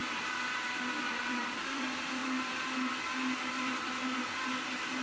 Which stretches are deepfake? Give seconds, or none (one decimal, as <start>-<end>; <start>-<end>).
0.0-2.2; 3.5-5.0